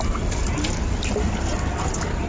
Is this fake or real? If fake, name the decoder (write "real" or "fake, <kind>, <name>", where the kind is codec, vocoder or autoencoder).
real